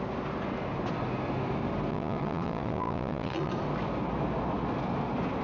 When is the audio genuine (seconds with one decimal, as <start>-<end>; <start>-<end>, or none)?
0.0-1.9; 3.5-5.4